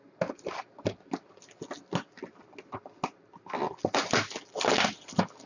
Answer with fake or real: real